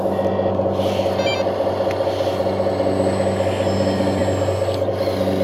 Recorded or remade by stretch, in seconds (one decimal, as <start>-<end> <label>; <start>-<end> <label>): 0.0-5.4 recorded